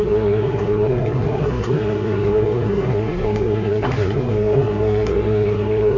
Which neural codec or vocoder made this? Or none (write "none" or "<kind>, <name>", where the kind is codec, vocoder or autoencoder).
codec, SNAC